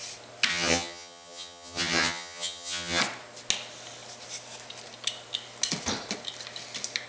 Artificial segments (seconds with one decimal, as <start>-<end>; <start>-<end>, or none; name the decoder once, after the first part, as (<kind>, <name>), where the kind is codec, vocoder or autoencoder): 0.5-3.0 (vocoder, HiFi-GAN)